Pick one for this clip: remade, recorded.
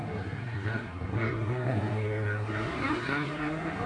remade